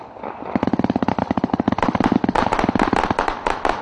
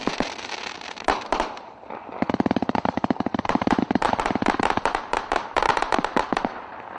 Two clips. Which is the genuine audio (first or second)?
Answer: first